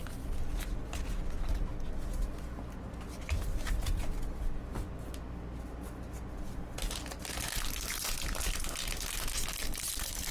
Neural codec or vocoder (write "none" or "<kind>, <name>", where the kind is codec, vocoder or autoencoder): none